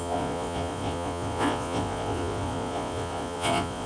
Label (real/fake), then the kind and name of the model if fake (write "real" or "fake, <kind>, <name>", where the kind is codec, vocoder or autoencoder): fake, vocoder, Vocos